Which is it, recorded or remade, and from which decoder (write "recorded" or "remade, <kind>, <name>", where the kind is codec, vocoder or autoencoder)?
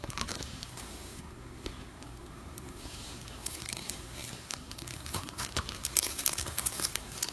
remade, codec, SNAC